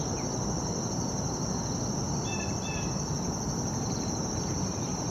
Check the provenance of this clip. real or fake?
real